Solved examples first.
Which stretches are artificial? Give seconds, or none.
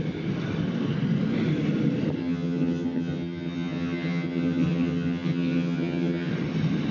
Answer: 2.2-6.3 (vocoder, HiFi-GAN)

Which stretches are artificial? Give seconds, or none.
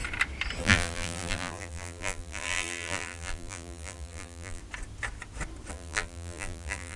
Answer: 0.6-4.6 (vocoder, BigVGAN v2); 5.7-7.0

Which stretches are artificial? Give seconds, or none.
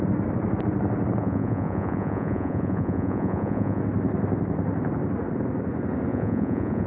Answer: 1.2-3.8 (vocoder, Vocos); 6.1-6.9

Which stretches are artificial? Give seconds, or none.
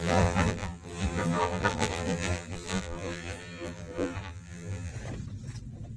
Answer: 0.0-4.9 (vocoder, BigVGAN v2)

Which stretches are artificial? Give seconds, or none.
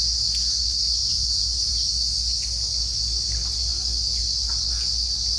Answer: 1.0-1.7 (vocoder, BigVGAN v2); 3.7-4.2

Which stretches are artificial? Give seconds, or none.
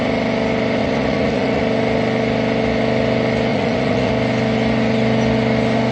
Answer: 0.8-1.6 (vocoder, Vocos); 3.5-4.1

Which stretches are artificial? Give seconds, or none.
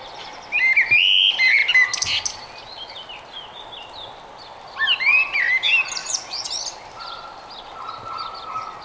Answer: 6.0-6.5 (vocoder, Vocos)